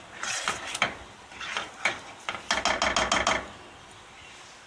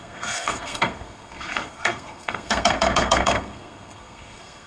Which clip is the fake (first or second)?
second